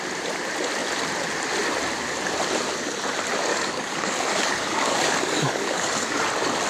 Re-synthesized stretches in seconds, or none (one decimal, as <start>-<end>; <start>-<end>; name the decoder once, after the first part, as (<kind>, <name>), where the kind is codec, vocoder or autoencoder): 3.5-6.2 (codec, DAC)